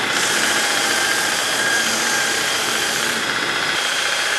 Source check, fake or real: fake